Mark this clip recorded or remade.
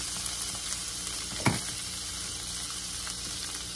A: recorded